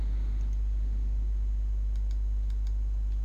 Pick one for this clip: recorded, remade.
recorded